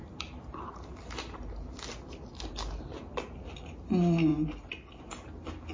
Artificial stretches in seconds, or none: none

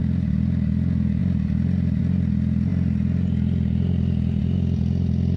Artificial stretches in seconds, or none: none

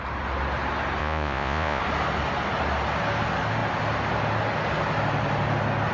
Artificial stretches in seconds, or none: 1.0-1.8

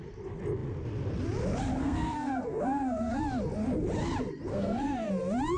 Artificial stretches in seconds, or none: 1.8-3.2; 4.5-5.1

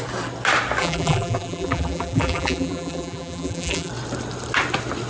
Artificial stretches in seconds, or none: 0.8-3.9